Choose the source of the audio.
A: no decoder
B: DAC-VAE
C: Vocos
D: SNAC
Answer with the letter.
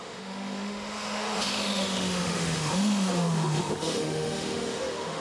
B